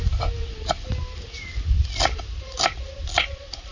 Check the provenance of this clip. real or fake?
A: real